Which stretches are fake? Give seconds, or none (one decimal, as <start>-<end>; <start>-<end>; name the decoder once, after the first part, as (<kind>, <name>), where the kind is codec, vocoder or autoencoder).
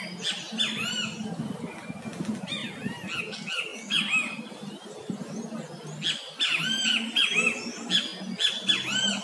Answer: none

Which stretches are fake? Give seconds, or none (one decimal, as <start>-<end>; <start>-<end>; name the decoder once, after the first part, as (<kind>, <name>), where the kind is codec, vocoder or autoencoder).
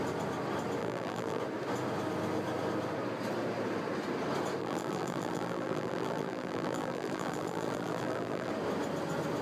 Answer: 0.8-1.4 (vocoder, BigVGAN v2); 4.6-8.5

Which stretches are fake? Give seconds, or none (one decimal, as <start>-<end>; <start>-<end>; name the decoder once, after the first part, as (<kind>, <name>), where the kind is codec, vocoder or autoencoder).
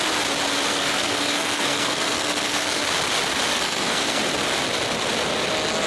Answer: 0.7-2.8 (codec, SNAC); 3.5-4.2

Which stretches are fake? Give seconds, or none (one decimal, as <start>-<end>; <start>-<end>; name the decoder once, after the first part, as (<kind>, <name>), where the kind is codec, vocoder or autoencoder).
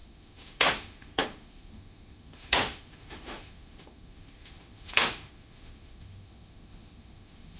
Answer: 0.0-7.6 (autoencoder, DAC-VAE)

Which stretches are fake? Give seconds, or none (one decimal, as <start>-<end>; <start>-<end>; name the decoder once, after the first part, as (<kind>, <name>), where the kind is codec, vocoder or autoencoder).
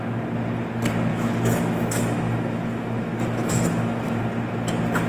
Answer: 1.1-4.2 (autoencoder, DAC-VAE)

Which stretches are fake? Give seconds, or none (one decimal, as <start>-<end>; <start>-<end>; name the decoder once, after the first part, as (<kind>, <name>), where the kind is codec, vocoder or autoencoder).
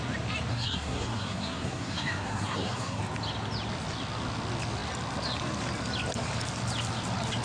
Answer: 0.5-3.0 (codec, SNAC)